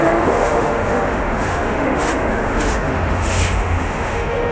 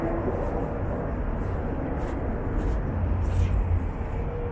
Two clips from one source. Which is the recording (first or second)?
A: second